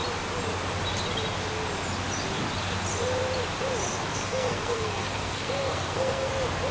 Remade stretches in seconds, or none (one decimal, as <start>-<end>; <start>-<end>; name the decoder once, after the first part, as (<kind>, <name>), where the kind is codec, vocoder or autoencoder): 4.1-6.3 (codec, SNAC)